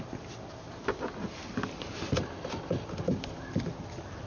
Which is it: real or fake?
real